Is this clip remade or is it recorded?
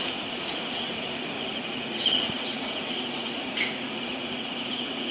remade